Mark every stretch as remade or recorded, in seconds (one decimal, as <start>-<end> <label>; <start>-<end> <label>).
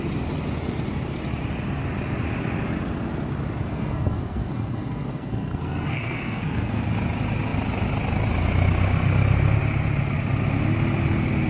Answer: 0.0-3.7 recorded; 3.7-6.8 remade; 6.8-11.5 recorded